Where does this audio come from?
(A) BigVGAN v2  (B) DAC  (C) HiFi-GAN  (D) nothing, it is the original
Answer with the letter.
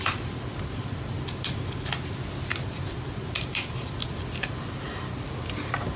D